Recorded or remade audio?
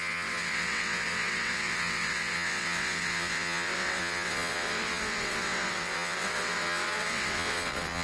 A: remade